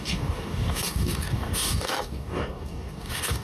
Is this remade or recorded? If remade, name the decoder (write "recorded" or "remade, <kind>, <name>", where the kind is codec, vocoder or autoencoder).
remade, codec, DAC